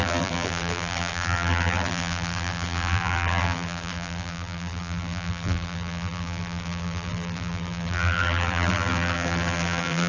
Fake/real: fake